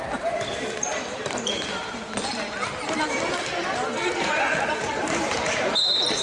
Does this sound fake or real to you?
fake